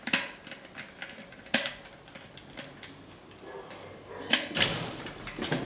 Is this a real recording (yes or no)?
yes